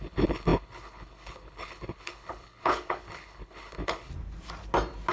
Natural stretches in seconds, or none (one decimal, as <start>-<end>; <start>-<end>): 4.1-5.1